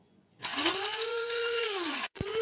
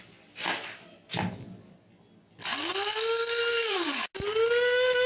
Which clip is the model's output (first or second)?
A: first